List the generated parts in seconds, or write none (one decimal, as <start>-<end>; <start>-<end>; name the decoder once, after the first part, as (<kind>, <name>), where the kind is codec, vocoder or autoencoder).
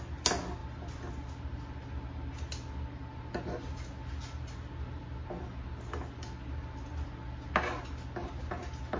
none